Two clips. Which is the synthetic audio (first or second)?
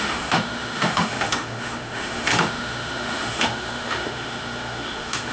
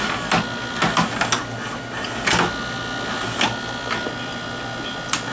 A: first